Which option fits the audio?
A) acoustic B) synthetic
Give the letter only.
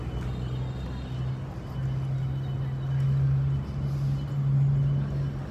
A